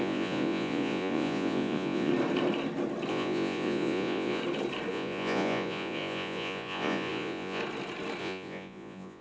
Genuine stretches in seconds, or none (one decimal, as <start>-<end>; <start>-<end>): 2.1-3.1; 4.4-4.9; 7.6-8.2